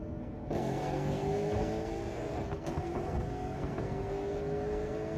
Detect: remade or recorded remade